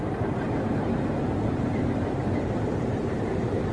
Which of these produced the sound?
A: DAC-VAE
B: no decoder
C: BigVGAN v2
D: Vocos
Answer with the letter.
C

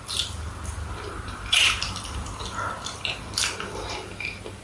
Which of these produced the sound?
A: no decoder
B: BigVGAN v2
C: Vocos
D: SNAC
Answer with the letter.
B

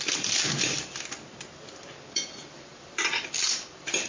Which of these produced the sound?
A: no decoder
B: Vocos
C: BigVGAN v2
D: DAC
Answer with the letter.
C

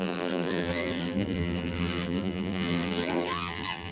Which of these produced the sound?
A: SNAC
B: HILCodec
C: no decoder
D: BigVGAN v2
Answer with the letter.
D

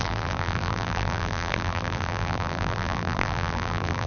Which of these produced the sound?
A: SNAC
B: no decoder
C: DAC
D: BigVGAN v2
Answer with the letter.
D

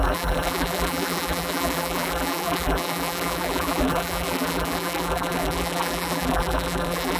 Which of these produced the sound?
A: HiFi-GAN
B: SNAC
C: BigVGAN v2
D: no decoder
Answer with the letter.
C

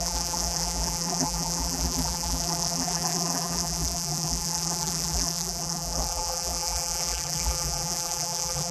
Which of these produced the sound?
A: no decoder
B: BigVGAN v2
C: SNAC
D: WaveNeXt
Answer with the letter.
B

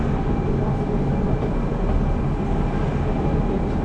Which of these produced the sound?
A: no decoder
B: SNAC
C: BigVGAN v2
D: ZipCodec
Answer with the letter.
A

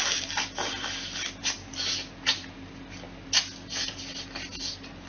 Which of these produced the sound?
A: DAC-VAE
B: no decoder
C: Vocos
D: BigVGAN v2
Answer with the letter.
B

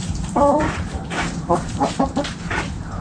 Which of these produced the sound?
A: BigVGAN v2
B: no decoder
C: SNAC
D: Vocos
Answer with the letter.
A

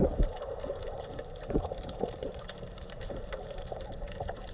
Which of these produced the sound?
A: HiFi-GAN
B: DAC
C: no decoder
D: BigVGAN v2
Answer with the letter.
D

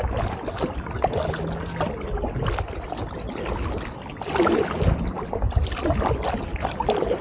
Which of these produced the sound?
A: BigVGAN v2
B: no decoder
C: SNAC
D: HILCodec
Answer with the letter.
B